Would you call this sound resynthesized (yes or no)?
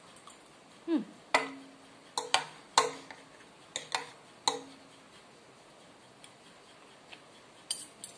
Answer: no